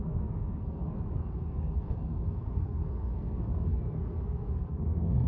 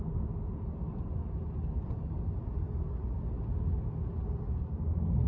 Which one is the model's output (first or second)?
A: first